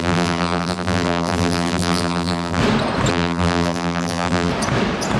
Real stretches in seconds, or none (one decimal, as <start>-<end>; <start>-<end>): 2.6-3.1; 4.5-5.2

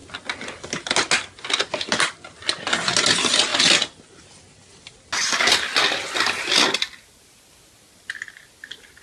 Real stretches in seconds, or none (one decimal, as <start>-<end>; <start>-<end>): 0.0-9.0

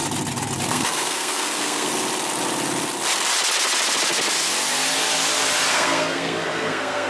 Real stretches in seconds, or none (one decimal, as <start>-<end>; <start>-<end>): 0.0-0.7; 1.9-5.7

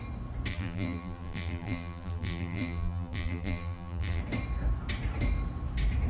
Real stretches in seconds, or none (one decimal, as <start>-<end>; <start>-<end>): 0.0-0.5; 4.2-6.1

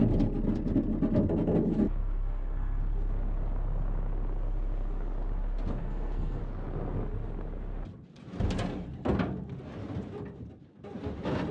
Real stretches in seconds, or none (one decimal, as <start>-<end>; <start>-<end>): 0.0-2.0; 2.8-5.8; 6.4-11.5

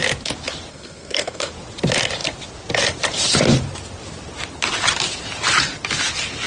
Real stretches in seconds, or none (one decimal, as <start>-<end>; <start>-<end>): 0.0-0.7; 1.5-6.5